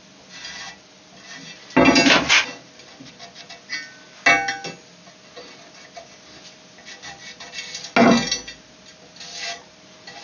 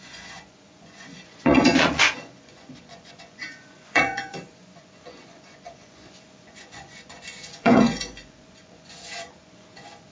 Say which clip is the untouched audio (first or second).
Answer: first